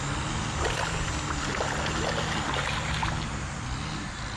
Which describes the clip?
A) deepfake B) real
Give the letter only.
B